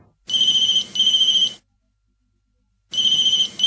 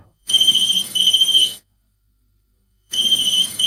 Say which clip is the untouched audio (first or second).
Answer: first